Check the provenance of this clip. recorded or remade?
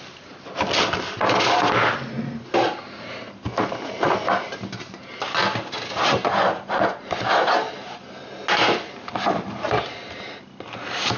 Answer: recorded